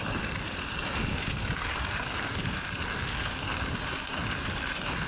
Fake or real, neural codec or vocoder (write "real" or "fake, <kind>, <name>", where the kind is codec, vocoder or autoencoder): real